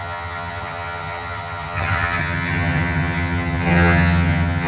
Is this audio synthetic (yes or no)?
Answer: yes